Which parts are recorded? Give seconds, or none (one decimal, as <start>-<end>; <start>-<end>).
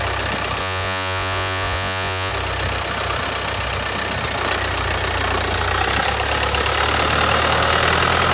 0.0-0.6; 2.3-8.3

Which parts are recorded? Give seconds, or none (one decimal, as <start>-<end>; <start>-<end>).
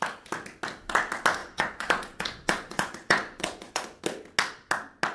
0.0-1.4; 4.0-5.1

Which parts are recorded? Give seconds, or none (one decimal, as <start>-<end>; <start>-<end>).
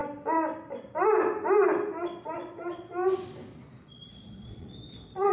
0.0-2.0; 2.9-3.7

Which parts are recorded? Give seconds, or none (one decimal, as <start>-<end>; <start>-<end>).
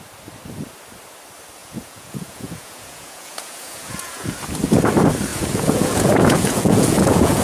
0.0-1.6; 4.3-5.3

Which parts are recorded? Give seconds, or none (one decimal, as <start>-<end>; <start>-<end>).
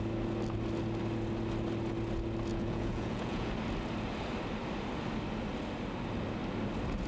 0.0-2.5; 3.5-7.1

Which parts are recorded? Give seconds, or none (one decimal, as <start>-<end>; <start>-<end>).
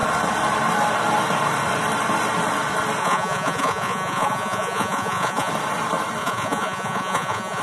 0.0-3.0; 5.5-6.2